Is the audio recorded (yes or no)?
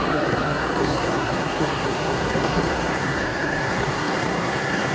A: no